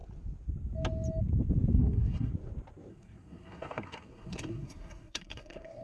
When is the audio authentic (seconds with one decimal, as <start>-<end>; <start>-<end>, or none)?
0.0-1.7; 2.3-2.9